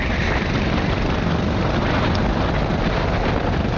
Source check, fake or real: real